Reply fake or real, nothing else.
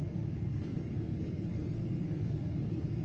fake